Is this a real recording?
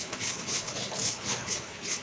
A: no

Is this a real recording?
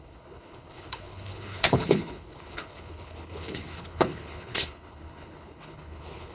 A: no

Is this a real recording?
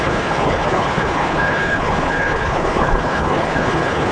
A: no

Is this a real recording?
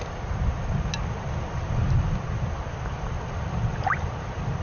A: yes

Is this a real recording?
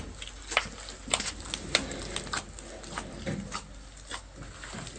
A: yes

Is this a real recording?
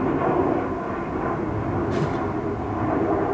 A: yes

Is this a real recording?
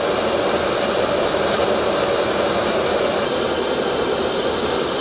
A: yes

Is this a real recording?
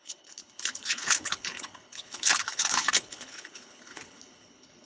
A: no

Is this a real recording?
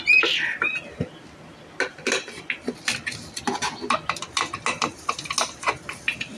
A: yes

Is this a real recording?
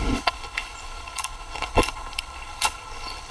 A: no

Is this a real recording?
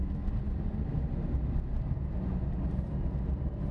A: yes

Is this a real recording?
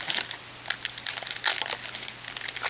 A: yes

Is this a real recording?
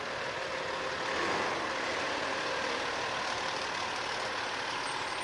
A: yes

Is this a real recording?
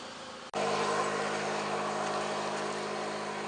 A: yes